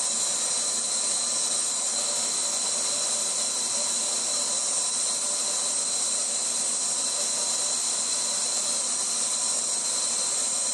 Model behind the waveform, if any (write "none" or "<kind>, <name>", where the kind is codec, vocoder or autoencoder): none